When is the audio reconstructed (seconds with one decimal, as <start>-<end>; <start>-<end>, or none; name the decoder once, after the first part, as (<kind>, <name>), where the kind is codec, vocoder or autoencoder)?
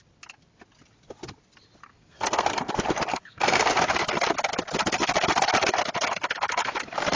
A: 1.9-2.7 (codec, SNAC); 3.1-3.7